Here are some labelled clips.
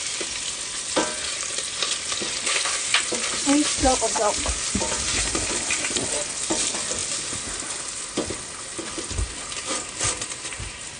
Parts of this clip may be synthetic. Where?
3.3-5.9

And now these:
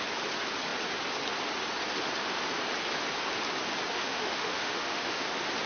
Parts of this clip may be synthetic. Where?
3.9-5.3

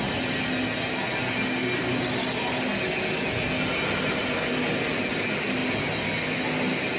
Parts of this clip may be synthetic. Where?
none

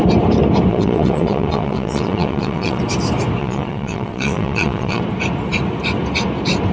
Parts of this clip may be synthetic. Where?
0.7-2.8; 3.4-5.0

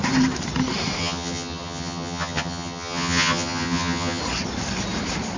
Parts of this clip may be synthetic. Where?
1.0-4.2

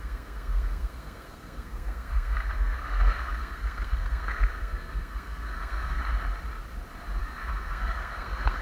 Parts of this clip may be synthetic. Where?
0.0-6.0; 7.2-8.6

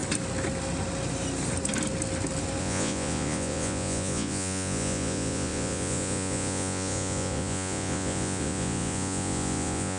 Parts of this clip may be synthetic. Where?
2.6-10.0